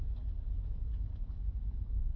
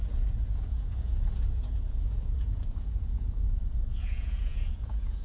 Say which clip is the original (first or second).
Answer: first